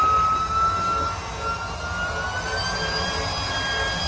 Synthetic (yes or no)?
no